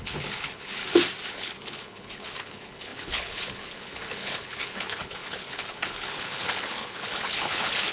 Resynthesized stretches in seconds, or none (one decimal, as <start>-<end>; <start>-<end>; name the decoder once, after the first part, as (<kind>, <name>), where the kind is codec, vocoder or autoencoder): 0.0-0.8 (codec, HILCodec); 1.3-7.9